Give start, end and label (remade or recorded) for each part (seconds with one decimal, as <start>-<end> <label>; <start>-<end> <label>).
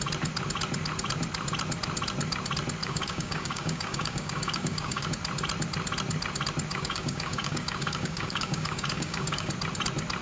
0.0-2.8 recorded; 2.8-5.1 remade; 5.1-6.7 recorded; 6.7-9.5 remade; 9.5-10.2 recorded